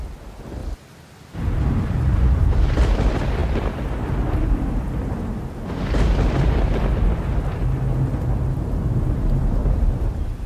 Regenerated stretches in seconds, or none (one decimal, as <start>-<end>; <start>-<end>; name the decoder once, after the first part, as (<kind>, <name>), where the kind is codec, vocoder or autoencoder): 9.6-10.5 (vocoder, BigVGAN v2)